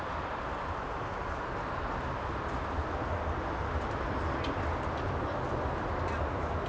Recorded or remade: recorded